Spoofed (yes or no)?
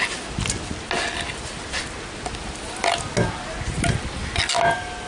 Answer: no